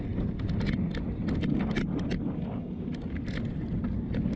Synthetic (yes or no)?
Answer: no